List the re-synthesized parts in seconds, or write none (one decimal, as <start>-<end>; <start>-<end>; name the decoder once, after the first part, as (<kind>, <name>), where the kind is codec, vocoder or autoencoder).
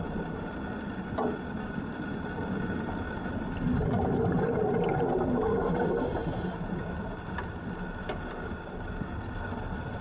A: none